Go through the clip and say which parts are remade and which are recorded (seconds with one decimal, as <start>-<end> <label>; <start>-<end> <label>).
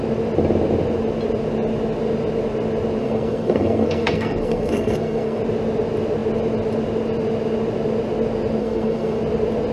0.0-3.0 recorded; 3.0-5.4 remade; 5.4-8.6 recorded; 8.6-9.2 remade; 9.2-9.7 recorded